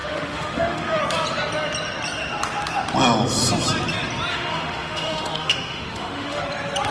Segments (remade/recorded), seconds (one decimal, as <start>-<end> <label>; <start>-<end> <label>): 0.0-1.0 remade; 1.0-4.3 recorded; 4.3-6.4 remade; 6.4-6.9 recorded